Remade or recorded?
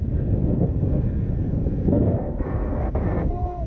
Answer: remade